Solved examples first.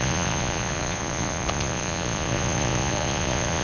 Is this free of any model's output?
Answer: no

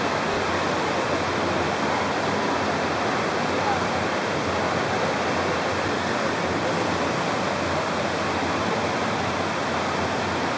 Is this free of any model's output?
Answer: yes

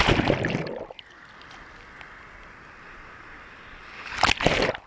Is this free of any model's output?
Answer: yes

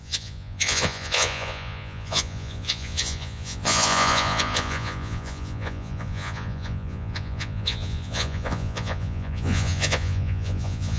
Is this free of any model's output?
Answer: no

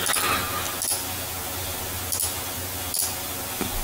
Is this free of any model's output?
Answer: yes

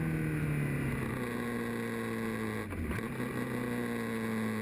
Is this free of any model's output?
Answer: yes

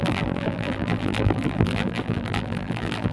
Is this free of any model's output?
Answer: no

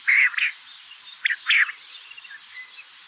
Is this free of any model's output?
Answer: yes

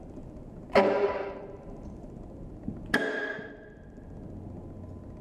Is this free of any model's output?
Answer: yes